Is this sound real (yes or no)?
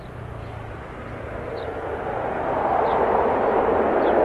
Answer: yes